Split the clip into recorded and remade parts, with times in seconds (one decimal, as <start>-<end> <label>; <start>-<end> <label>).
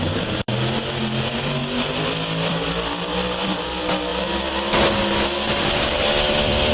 0.0-0.5 remade; 0.5-1.2 recorded; 1.2-4.1 remade; 4.1-4.9 recorded; 4.9-6.7 remade